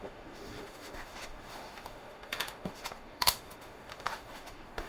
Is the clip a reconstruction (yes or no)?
yes